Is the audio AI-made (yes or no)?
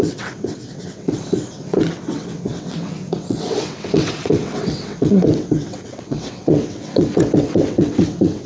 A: yes